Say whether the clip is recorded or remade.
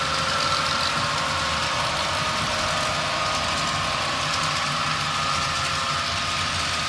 recorded